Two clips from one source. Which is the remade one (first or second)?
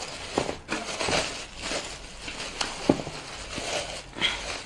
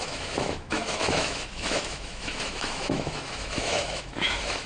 second